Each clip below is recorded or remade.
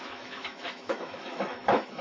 remade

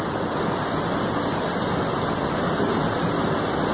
recorded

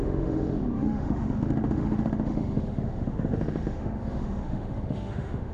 remade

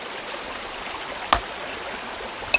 recorded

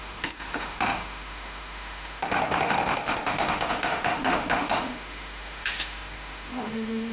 remade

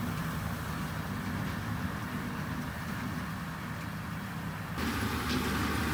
recorded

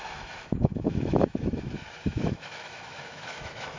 remade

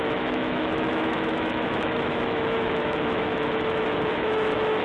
remade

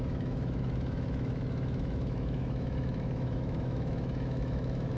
remade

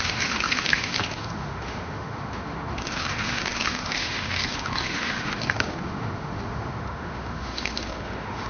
remade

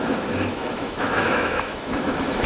remade